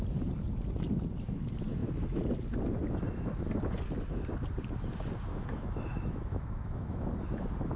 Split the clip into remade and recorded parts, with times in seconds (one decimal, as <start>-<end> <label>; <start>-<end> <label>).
0.0-5.3 recorded; 5.3-7.1 remade; 7.1-7.8 recorded